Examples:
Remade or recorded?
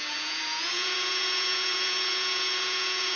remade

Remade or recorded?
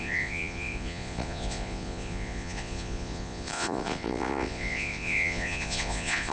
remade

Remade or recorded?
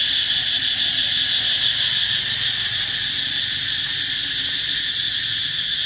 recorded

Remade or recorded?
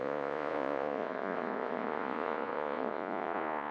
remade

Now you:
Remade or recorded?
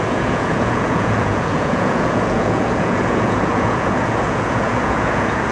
remade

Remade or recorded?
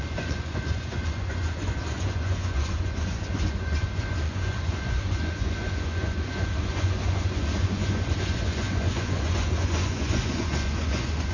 remade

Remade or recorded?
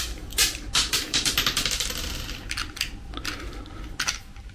recorded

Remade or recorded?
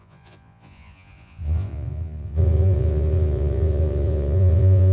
remade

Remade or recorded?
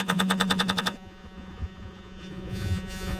remade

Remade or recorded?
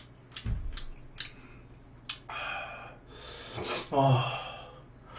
recorded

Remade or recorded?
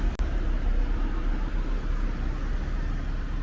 recorded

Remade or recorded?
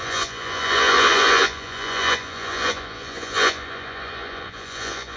remade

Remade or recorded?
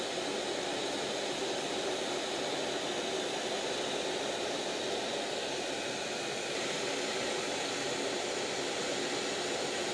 recorded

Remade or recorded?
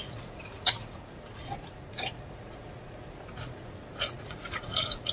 remade